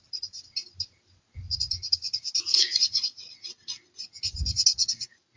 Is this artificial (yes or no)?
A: no